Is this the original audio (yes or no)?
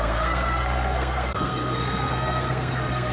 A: no